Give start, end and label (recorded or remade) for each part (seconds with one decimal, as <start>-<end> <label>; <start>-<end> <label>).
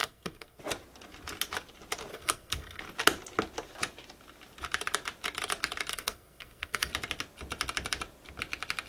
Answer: 0.0-0.6 remade; 0.6-2.1 recorded; 2.1-2.8 remade; 2.8-5.9 recorded; 5.9-6.9 remade; 6.9-8.9 recorded